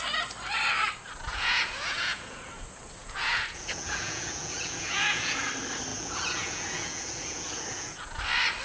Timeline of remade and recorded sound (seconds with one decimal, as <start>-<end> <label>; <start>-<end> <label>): 0.0-1.3 recorded; 1.3-2.4 remade; 2.4-3.0 recorded; 3.0-5.5 remade; 5.5-5.9 recorded; 5.9-8.2 remade; 8.2-8.6 recorded